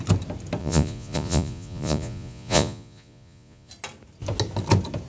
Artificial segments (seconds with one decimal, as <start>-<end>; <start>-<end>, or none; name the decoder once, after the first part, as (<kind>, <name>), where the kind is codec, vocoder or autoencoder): 0.6-3.7 (vocoder, Vocos)